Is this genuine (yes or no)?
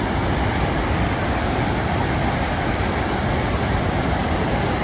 yes